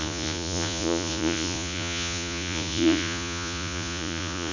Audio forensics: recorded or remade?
remade